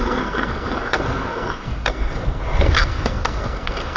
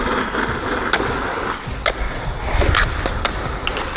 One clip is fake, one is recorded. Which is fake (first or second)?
first